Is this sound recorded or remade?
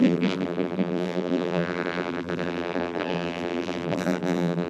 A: remade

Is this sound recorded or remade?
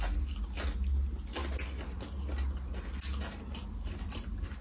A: recorded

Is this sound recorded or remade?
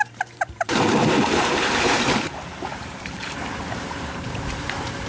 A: remade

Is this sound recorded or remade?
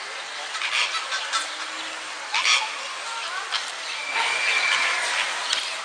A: remade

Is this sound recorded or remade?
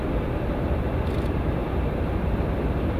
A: recorded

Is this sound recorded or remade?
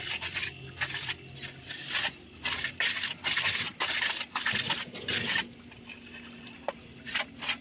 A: recorded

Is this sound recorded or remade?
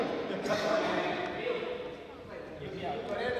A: recorded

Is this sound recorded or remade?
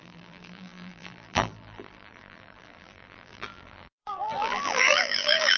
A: remade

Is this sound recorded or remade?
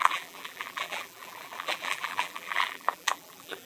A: remade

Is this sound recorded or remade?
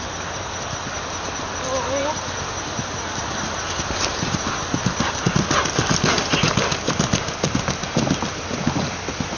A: recorded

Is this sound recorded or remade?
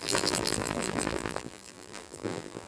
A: remade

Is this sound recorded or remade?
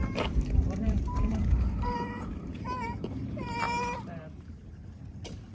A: remade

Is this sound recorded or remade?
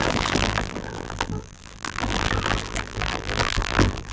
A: remade